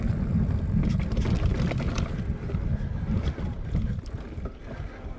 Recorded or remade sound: recorded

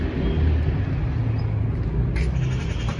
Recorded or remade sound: recorded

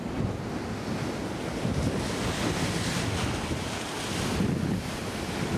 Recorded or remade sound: recorded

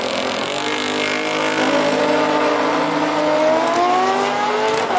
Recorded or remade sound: recorded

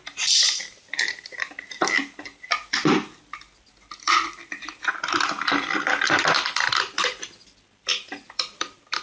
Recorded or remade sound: remade